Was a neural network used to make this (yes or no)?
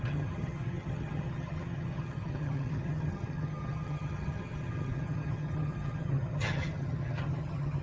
yes